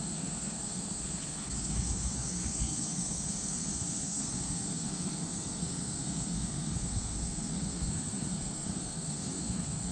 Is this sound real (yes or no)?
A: no